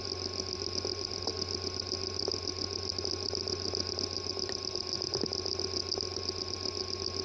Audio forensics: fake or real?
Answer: real